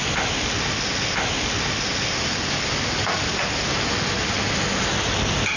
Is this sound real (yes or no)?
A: yes